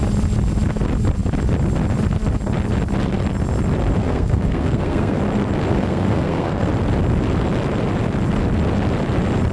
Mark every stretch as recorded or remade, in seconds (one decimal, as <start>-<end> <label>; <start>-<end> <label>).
0.0-4.0 recorded; 4.0-5.2 remade; 5.2-5.7 recorded; 5.7-6.7 remade; 6.7-9.5 recorded